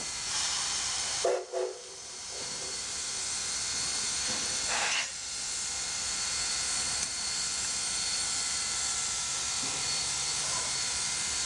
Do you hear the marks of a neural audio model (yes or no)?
yes